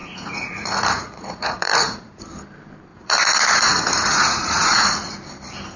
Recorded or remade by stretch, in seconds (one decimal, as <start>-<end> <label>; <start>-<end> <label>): 0.0-2.2 remade; 2.2-2.9 recorded; 2.9-5.1 remade; 5.1-5.8 recorded